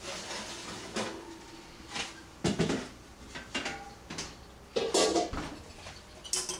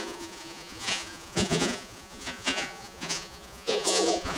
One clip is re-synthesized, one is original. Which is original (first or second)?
first